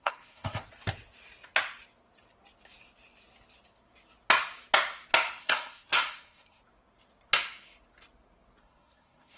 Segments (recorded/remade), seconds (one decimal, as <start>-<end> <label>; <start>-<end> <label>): 0.0-0.6 remade; 0.6-5.4 recorded; 5.4-6.6 remade; 6.6-8.6 recorded; 8.6-9.4 remade